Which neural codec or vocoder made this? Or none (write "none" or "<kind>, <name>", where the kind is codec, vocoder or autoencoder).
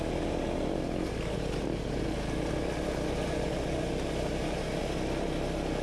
none